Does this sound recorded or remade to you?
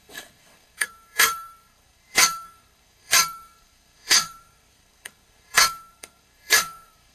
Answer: remade